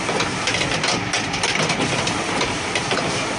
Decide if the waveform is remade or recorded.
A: recorded